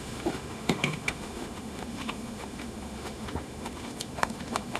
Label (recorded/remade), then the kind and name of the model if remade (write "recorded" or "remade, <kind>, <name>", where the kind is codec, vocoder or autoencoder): remade, autoencoder, DAC-VAE